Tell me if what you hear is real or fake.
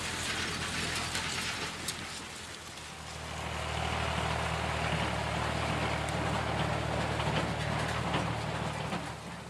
real